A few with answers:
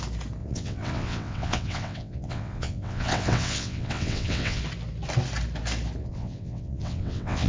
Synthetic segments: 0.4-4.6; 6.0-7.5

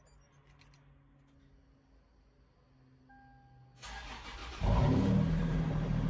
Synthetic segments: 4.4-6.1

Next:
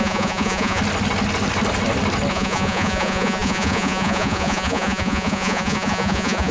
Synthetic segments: 0.0-0.8; 2.3-6.5

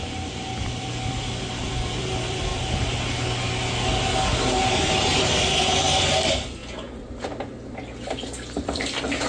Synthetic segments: 0.0-2.5; 4.7-6.6; 8.6-9.3

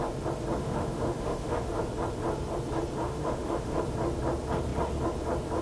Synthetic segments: 0.6-1.8; 3.0-3.8